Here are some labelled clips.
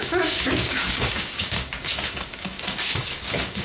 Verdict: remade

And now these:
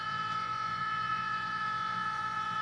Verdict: remade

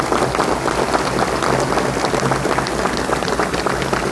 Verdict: recorded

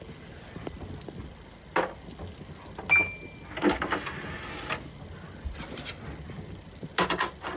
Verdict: recorded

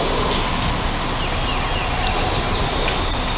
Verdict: recorded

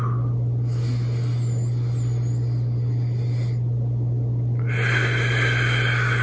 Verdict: recorded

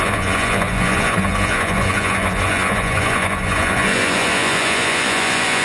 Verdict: remade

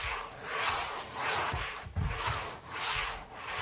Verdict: remade